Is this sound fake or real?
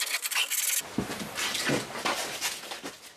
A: real